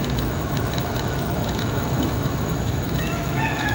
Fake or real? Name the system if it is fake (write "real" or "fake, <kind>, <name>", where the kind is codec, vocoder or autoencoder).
fake, autoencoder, DAC-VAE